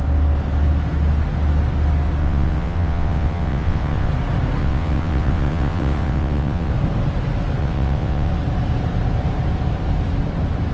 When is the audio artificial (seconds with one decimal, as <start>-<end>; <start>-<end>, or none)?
2.2-4.1; 4.6-6.7; 7.6-8.3